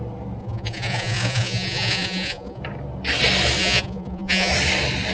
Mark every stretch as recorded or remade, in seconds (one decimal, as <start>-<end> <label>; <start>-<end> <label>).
0.0-0.4 recorded; 0.4-2.6 remade; 2.6-3.6 recorded; 3.6-4.5 remade; 4.5-5.1 recorded